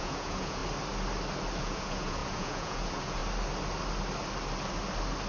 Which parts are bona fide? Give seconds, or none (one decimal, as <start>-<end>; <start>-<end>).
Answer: 0.6-1.6; 3.2-5.3